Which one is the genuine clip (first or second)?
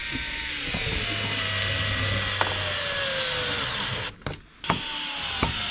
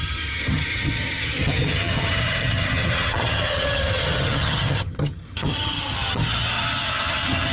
first